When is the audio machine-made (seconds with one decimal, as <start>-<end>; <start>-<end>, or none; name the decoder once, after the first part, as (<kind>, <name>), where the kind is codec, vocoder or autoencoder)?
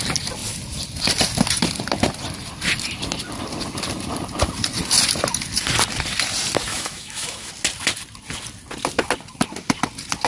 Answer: 6.7-7.5 (autoencoder, DAC-VAE)